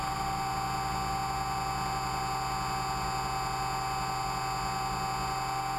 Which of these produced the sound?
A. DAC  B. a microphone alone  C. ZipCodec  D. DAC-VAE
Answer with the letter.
B